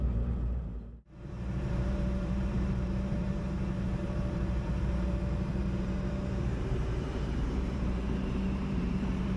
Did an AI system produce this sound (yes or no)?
yes